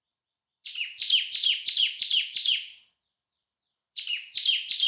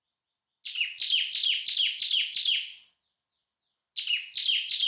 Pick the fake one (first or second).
first